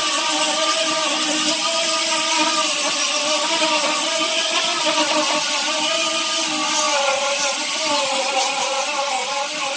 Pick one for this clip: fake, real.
real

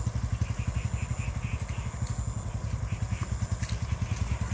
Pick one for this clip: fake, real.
real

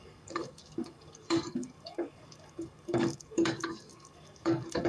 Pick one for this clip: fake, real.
fake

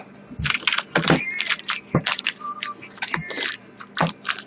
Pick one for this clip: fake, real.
real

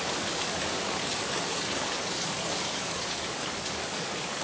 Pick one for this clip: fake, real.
fake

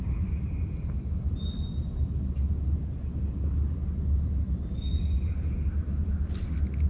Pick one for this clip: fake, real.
real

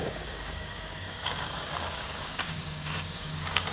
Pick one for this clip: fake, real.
fake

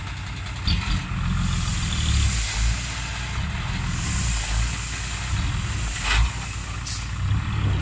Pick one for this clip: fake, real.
real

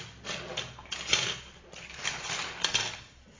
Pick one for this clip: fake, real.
real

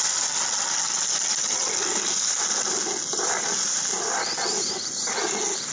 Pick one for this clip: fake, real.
real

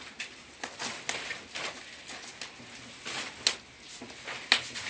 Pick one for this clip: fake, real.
real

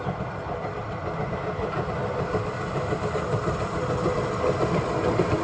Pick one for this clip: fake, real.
real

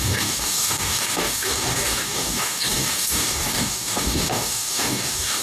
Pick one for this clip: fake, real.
fake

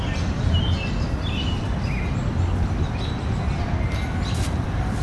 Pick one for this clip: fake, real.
real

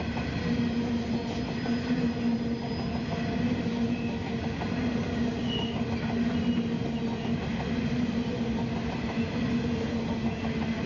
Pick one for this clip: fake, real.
real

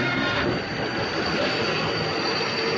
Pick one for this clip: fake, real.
real